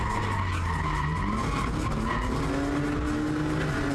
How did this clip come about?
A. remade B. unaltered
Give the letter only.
B